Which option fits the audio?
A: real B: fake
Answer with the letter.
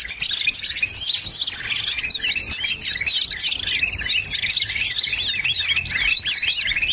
A